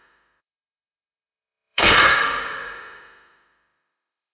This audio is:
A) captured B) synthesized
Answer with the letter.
B